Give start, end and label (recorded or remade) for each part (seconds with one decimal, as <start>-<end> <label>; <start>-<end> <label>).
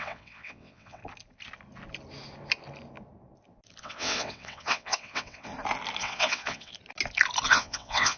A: 0.0-1.0 remade; 1.0-3.8 recorded; 3.8-5.5 remade; 5.5-6.0 recorded; 6.0-6.7 remade; 6.7-7.5 recorded; 7.5-8.2 remade